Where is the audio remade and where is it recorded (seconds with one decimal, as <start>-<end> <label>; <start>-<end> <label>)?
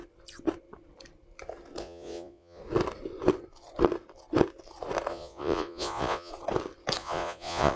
0.0-1.8 recorded; 1.8-2.6 remade; 2.6-5.1 recorded; 5.1-6.3 remade; 6.3-7.0 recorded; 7.0-7.8 remade